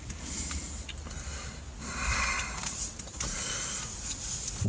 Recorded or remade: recorded